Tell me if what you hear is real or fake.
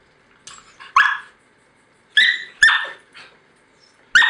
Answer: real